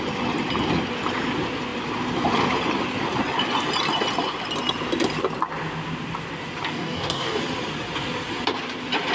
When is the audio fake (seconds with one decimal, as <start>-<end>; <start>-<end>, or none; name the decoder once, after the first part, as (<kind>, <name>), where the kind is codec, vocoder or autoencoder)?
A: 6.7-7.4 (codec, DAC)